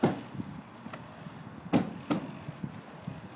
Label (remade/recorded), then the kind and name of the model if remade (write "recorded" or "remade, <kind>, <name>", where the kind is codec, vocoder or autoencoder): recorded